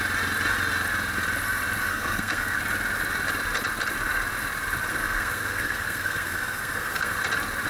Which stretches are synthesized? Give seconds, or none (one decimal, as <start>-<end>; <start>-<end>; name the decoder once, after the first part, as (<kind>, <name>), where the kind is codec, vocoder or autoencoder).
1.9-2.6 (codec, SNAC); 4.9-7.2